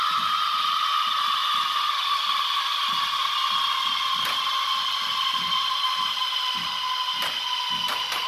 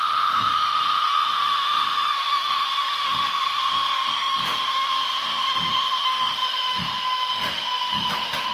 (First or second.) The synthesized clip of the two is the second